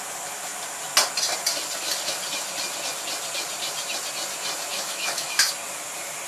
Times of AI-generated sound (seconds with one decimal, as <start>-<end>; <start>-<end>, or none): 4.7-5.5